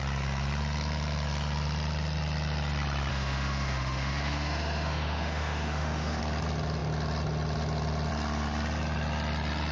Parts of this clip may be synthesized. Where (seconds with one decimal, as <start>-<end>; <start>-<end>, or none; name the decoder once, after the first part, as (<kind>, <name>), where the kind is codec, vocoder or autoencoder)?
3.1-6.2 (autoencoder, DAC-VAE)